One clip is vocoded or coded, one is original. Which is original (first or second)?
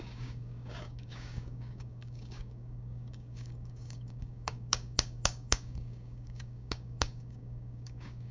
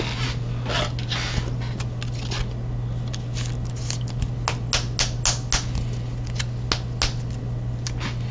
second